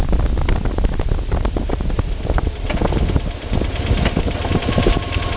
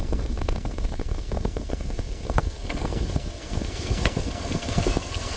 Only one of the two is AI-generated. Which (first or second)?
second